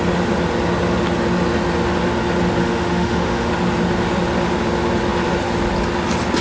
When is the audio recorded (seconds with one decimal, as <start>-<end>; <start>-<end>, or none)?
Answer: 0.0-2.6; 3.5-6.4